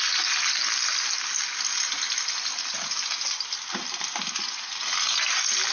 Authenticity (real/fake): real